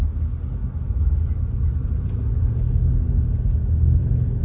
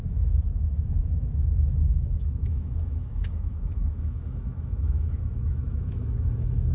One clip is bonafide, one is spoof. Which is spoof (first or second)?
second